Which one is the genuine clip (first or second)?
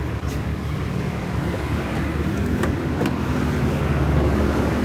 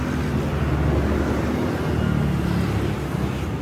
second